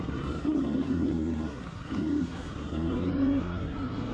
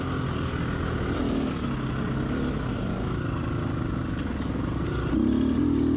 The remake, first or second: first